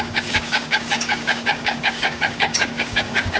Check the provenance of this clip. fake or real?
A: fake